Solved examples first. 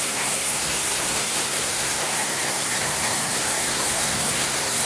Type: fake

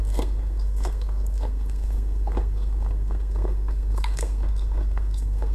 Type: fake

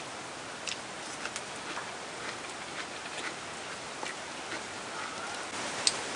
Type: real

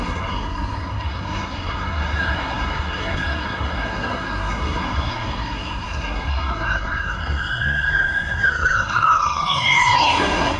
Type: fake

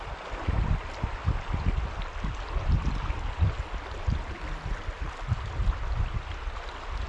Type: real